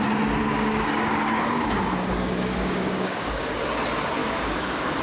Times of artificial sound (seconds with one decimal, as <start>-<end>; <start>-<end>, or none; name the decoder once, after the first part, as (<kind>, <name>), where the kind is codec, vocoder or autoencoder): 0.4-3.4 (codec, DAC); 4.2-5.0